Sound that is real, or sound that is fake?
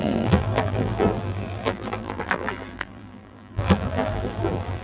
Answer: fake